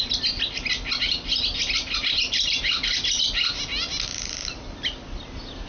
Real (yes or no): yes